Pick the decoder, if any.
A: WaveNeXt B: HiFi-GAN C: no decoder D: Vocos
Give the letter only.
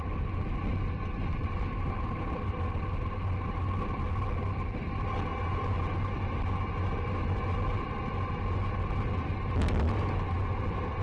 C